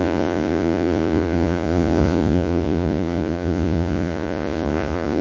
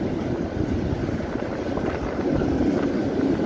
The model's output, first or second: first